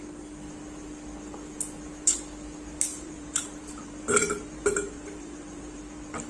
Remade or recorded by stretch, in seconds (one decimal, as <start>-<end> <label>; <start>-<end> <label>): 0.0-2.9 recorded; 2.9-5.8 remade; 5.8-6.3 recorded